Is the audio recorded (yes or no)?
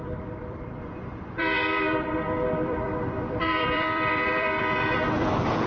no